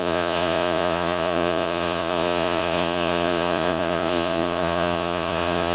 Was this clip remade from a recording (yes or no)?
yes